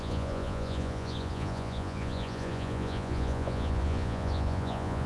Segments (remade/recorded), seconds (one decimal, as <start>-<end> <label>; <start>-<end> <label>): 0.0-5.1 remade